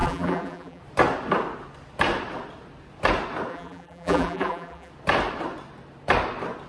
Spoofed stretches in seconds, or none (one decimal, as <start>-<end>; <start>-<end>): 0.0-0.8; 3.5-4.9